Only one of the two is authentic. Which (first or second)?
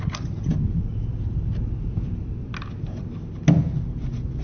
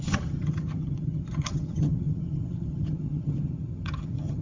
first